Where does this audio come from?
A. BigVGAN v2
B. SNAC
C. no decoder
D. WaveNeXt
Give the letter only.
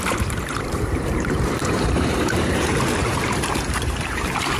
A